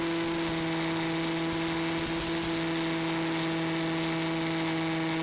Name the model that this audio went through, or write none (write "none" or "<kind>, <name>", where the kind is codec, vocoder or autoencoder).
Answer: none